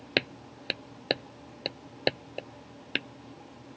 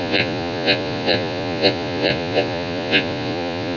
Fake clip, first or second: second